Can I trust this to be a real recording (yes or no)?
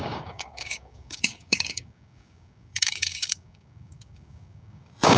no